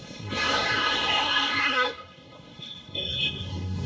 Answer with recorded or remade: remade